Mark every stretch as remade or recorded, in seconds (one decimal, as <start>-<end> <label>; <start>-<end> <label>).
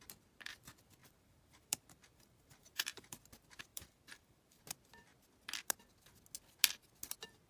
0.0-1.0 recorded; 1.0-3.2 remade; 3.2-3.7 recorded; 3.7-4.6 remade; 4.6-7.5 recorded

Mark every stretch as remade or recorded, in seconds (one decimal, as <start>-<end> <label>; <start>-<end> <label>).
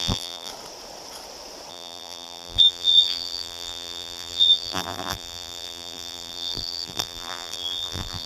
0.0-0.5 remade; 0.5-1.7 recorded; 1.7-8.3 remade